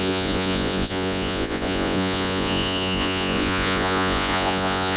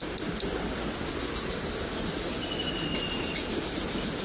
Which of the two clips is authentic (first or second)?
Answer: second